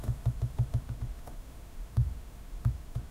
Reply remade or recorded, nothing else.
remade